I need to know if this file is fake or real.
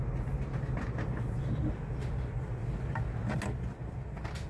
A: real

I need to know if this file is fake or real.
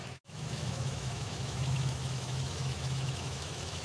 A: fake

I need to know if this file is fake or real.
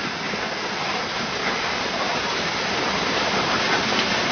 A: real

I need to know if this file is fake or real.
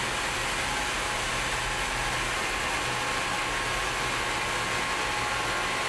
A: real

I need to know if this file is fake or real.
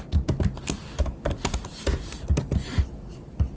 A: real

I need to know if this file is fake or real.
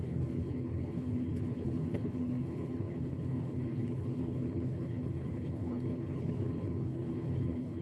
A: fake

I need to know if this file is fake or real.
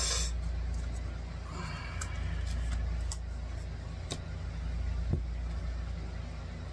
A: real